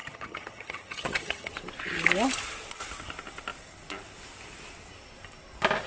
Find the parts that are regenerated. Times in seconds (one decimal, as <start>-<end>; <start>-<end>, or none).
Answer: 0.0-1.5